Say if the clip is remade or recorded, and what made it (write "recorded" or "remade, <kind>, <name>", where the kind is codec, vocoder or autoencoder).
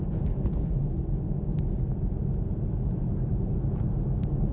recorded